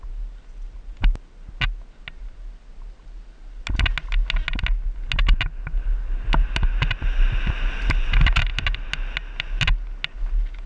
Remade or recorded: recorded